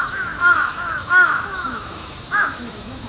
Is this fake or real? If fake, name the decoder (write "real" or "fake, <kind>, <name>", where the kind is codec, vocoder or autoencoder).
fake, autoencoder, DAC-VAE